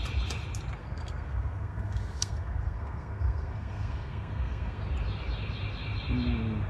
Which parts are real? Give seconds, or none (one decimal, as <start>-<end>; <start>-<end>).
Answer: 0.0-0.8; 4.8-6.7